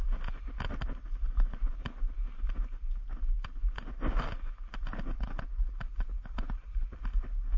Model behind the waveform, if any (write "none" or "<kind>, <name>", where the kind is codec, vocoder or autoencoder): none